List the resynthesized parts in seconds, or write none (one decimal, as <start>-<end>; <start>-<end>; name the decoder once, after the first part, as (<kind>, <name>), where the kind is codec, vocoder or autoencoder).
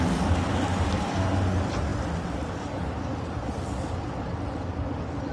none